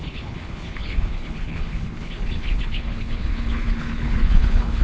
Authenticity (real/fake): fake